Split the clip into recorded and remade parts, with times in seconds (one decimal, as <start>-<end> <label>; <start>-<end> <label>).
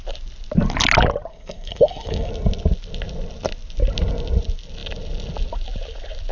0.0-1.3 recorded; 1.3-2.3 remade; 2.3-6.3 recorded